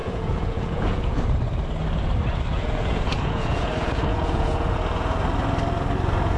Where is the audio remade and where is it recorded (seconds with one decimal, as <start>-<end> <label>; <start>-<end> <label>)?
0.0-1.2 remade; 1.2-2.5 recorded; 2.5-5.2 remade; 5.2-6.4 recorded